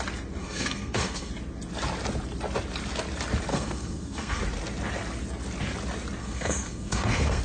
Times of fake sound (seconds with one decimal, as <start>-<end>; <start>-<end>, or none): 0.4-1.3; 3.5-4.4; 6.2-7.4